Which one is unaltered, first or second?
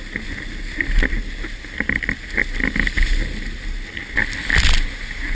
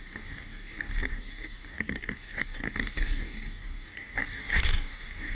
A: first